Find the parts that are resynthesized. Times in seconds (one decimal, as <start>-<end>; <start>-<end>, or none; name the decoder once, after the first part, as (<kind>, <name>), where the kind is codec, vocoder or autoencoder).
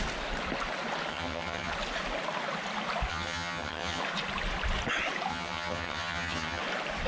1.1-1.7 (vocoder, HiFi-GAN); 3.1-4.0; 5.3-6.6